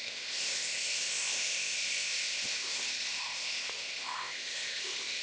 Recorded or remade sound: remade